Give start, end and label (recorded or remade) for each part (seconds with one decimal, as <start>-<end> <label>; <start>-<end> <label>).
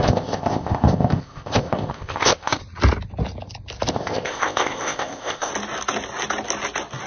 0.0-2.6 remade; 2.6-3.9 recorded; 3.9-5.5 remade; 5.5-7.1 recorded